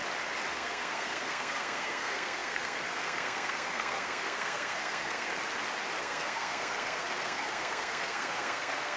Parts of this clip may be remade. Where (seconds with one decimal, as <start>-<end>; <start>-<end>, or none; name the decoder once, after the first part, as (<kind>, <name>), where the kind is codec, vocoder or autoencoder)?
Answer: 0.5-5.3 (codec, SNAC); 6.0-9.0